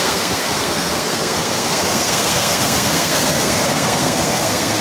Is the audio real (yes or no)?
no